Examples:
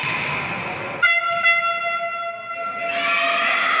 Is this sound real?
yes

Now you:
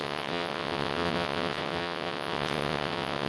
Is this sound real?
no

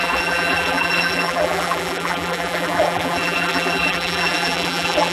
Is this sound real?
no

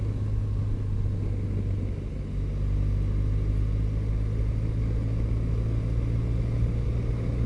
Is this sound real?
yes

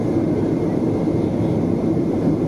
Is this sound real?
no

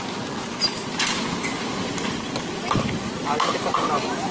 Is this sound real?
yes